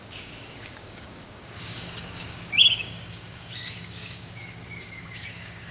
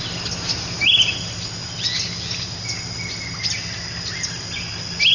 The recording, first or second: second